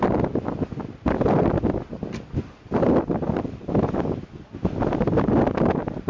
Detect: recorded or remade recorded